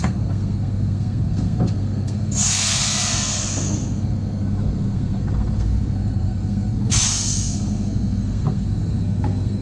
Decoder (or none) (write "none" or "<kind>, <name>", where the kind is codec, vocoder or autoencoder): codec, SNAC